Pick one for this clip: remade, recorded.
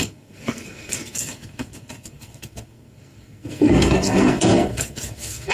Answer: remade